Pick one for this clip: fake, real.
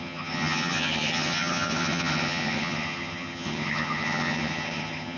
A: fake